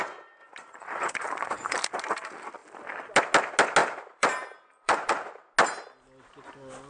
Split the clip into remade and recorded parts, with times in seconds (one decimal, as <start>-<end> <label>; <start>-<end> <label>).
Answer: 0.0-0.4 recorded; 0.4-1.1 remade; 1.1-3.8 recorded; 3.8-5.1 remade; 5.1-6.9 recorded